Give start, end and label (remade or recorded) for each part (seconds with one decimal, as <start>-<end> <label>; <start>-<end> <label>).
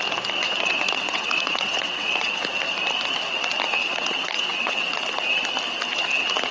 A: 0.0-0.4 recorded; 0.4-2.4 remade; 2.4-3.8 recorded; 3.8-5.0 remade; 5.0-6.5 recorded